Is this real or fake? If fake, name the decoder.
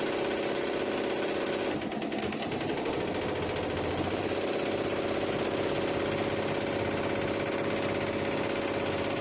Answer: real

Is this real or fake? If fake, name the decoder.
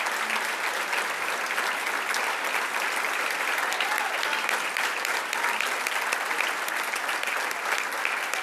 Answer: real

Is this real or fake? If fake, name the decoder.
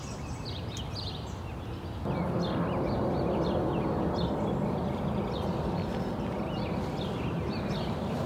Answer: real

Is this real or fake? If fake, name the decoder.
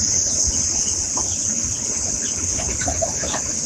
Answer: fake, codec, HILCodec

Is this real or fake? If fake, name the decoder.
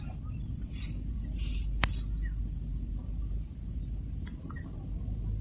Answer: real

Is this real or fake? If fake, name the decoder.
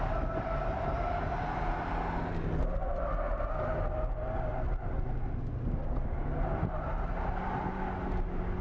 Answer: real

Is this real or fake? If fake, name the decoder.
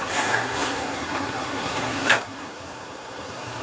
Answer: fake, codec, SNAC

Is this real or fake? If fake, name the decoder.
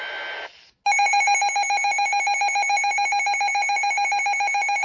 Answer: real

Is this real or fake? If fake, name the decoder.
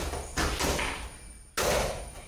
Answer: real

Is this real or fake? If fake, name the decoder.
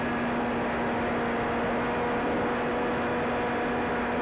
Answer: real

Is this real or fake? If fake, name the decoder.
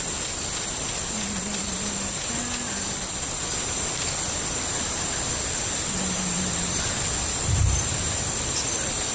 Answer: real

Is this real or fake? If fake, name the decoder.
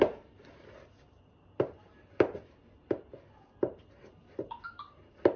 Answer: real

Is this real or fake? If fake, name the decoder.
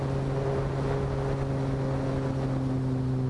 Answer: real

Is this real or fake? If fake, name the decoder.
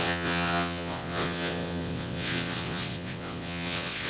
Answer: fake, vocoder, WaveNeXt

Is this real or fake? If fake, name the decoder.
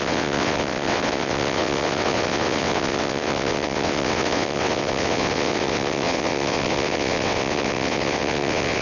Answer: fake, vocoder, WaveNeXt